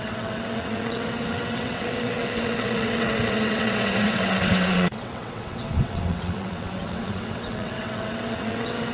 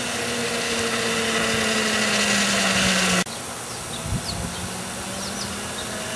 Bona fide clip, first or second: second